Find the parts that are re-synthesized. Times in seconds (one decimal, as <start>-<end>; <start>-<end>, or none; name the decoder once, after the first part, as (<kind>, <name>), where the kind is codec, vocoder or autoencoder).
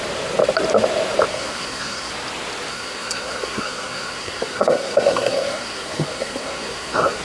1.3-2.1 (codec, SNAC); 2.7-7.2